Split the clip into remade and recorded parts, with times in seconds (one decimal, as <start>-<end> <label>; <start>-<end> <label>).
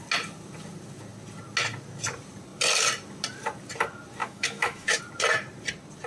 0.0-4.2 recorded; 4.2-5.0 remade; 5.0-6.1 recorded